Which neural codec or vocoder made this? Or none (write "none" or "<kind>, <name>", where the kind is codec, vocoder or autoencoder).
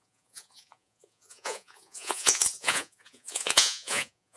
vocoder, Vocos